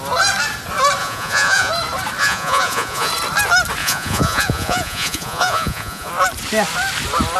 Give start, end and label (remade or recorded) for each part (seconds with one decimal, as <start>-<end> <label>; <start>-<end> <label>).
0.0-1.0 recorded; 1.0-1.7 remade; 1.7-2.2 recorded; 2.2-3.1 remade; 3.1-3.8 recorded; 3.8-6.1 remade; 6.1-7.4 recorded